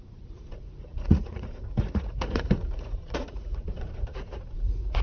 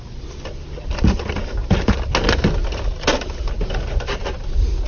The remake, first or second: first